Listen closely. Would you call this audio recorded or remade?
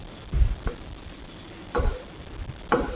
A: recorded